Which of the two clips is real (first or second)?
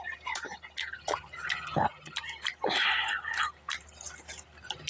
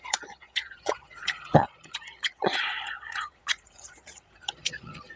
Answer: first